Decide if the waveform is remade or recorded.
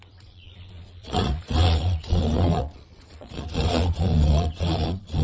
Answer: remade